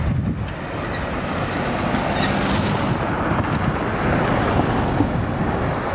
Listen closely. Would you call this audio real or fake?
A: real